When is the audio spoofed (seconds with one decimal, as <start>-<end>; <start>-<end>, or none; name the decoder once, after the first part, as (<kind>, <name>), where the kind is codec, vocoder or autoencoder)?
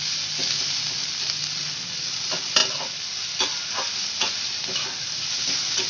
none